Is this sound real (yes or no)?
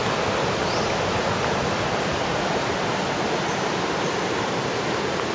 yes